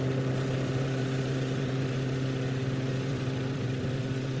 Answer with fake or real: fake